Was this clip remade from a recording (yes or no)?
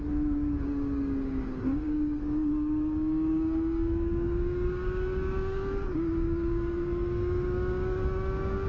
yes